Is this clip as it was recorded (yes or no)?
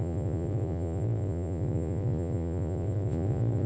no